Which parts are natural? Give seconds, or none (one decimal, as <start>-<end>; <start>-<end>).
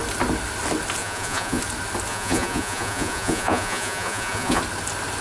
0.0-1.0; 1.6-2.1; 4.6-5.2